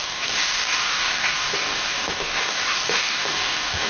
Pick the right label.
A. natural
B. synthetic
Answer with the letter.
B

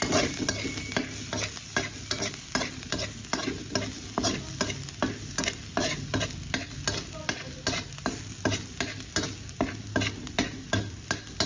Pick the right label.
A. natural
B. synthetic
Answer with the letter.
A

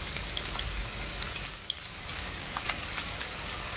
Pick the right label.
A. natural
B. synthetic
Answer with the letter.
B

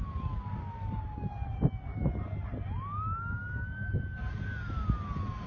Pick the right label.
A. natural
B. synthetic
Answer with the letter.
A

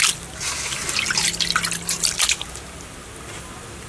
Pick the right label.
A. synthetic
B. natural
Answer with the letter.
B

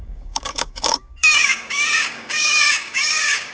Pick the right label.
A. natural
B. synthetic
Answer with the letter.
B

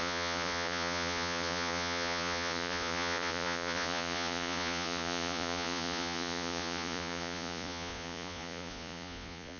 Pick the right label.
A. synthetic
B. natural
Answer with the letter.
A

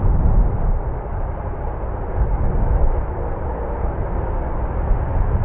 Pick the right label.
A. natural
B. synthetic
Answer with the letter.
A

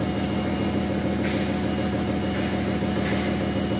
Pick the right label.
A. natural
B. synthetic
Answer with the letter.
A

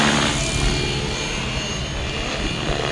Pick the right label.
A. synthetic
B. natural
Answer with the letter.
B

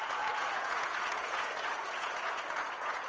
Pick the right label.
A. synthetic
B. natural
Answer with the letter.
A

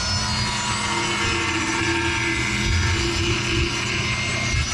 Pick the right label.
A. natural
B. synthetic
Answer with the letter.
A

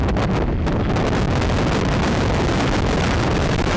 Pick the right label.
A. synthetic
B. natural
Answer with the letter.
B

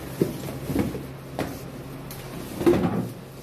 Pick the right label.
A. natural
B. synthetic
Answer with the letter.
A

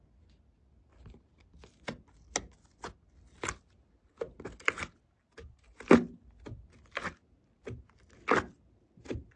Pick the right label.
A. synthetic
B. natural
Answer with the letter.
B